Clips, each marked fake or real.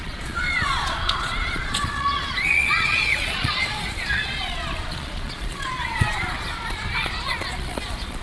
fake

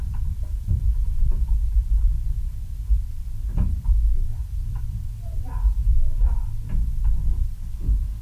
fake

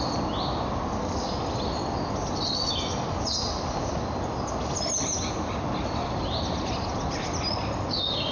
real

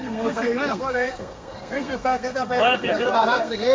fake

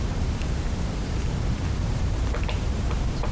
fake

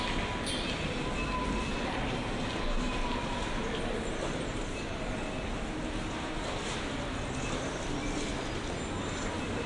real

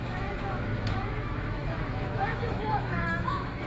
fake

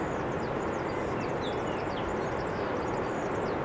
real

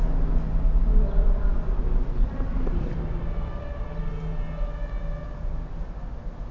real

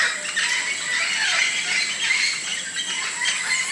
real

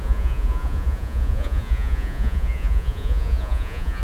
fake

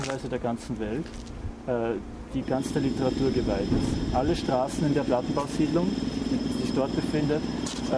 real